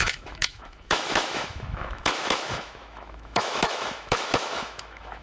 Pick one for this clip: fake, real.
fake